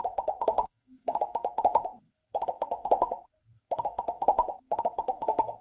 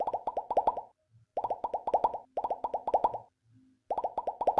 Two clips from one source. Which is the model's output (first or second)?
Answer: first